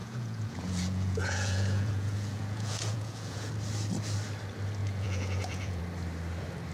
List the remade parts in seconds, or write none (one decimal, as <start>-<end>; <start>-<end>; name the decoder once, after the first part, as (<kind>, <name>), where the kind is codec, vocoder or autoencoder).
0.0-3.5 (vocoder, Vocos); 4.8-5.8